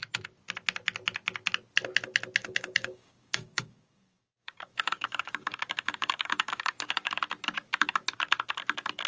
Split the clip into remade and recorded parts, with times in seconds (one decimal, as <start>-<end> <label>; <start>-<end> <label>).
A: 0.0-2.4 recorded; 2.4-7.1 remade; 7.1-9.1 recorded

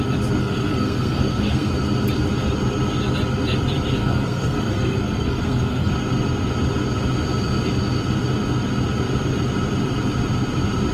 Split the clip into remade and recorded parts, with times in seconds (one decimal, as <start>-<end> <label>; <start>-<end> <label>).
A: 0.0-0.4 recorded; 0.4-1.7 remade; 1.7-4.0 recorded; 4.0-5.9 remade; 5.9-10.9 recorded

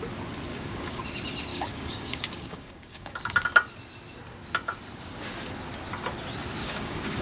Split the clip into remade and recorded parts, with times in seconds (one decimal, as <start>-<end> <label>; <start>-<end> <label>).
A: 0.0-0.5 recorded; 0.5-1.0 remade; 1.0-1.5 recorded; 1.5-3.2 remade; 3.2-6.6 recorded; 6.6-7.2 remade

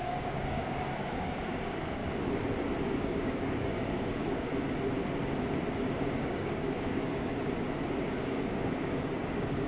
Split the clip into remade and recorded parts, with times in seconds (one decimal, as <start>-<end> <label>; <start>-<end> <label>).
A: 0.0-2.0 remade; 2.0-2.8 recorded; 2.8-4.5 remade; 4.5-6.2 recorded; 6.2-7.3 remade; 7.3-8.0 recorded; 8.0-9.7 remade

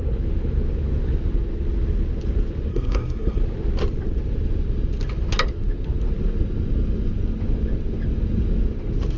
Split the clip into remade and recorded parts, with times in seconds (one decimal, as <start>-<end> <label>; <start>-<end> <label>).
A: 0.0-2.7 recorded; 2.7-3.4 remade; 3.4-9.2 recorded

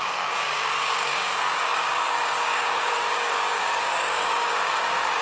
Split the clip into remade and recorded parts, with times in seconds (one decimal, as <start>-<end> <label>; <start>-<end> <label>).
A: 0.0-5.2 remade

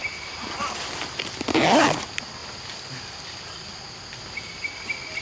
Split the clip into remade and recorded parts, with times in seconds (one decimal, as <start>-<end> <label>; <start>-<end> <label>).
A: 0.0-5.2 recorded